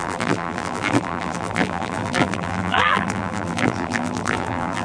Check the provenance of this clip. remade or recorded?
remade